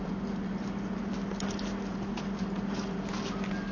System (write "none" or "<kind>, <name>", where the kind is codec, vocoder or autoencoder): none